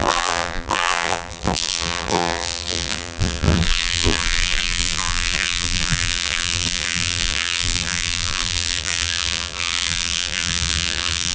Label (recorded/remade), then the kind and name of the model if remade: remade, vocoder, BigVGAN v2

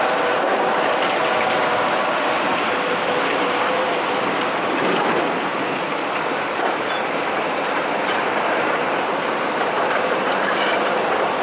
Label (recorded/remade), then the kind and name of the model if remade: remade, vocoder, BigVGAN v2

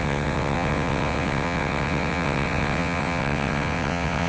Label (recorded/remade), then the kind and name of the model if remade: remade, vocoder, WaveNeXt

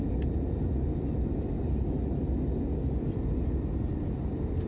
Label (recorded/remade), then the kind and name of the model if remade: recorded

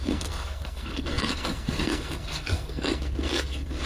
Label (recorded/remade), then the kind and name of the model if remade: remade, codec, SNAC